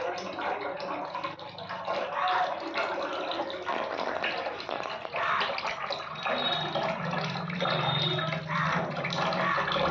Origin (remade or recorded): recorded